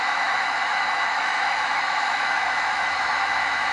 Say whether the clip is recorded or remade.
remade